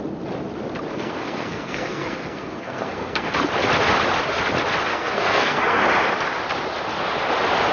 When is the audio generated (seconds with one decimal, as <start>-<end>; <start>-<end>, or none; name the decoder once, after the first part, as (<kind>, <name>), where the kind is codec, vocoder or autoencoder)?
0.9-3.3 (codec, SNAC); 4.9-5.8